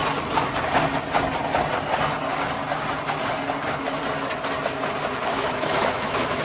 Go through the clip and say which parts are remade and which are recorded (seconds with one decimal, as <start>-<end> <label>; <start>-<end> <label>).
0.0-5.3 recorded; 5.3-6.4 remade

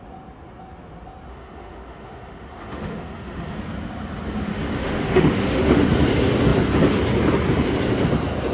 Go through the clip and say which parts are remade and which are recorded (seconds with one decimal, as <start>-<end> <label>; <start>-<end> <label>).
0.0-1.3 recorded; 1.3-3.6 remade; 3.6-4.5 recorded; 4.5-5.9 remade; 5.9-8.5 recorded

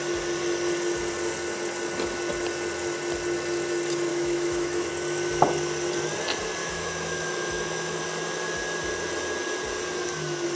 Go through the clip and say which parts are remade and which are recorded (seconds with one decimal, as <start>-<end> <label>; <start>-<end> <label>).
0.0-4.1 recorded; 4.1-4.9 remade; 4.9-6.6 recorded; 6.6-8.0 remade; 8.0-10.6 recorded

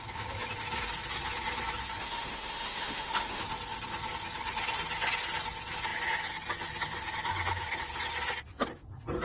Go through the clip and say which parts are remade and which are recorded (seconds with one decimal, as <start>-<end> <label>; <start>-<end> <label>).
0.0-2.0 recorded; 2.0-3.4 remade; 3.4-9.2 recorded